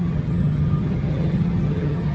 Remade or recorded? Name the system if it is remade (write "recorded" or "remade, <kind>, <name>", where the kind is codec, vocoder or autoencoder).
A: remade, vocoder, HiFi-GAN